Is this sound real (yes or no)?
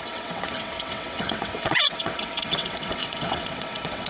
no